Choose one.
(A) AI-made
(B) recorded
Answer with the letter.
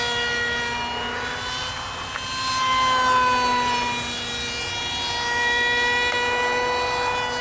B